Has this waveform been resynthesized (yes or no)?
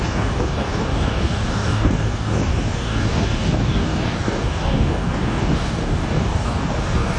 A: yes